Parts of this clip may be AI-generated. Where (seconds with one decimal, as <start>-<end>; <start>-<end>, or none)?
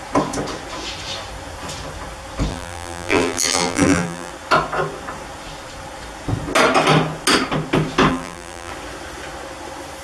2.5-4.3; 8.1-8.7